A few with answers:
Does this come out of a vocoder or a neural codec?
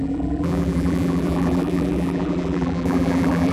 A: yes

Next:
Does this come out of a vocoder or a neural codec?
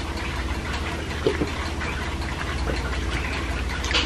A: no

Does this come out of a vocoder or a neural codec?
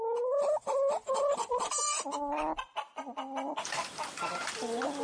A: no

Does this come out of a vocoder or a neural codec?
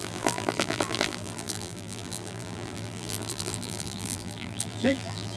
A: yes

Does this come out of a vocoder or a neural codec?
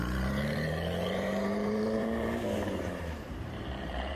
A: yes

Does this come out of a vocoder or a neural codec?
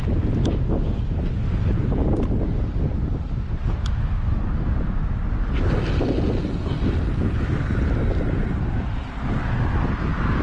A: no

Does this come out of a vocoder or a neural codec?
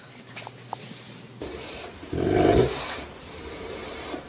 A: yes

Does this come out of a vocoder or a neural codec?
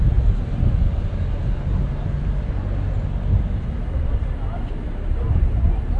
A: no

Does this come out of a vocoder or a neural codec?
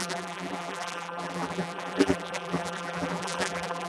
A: yes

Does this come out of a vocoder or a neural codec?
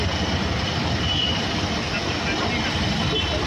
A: no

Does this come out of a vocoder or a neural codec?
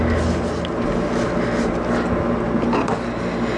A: no